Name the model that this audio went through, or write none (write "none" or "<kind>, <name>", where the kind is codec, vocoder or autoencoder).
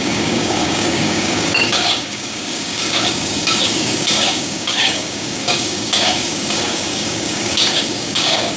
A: codec, DAC